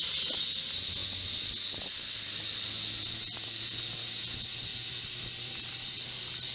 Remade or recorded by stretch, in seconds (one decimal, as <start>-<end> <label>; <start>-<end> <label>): 0.0-6.5 recorded